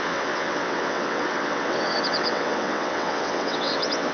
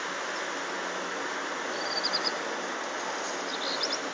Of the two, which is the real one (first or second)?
second